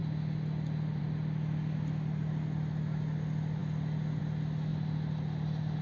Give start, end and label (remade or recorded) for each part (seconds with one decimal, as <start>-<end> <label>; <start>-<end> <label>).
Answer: 0.0-5.8 recorded